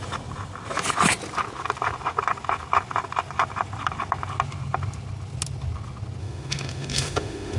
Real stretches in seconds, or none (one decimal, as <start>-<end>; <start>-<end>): 0.0-6.2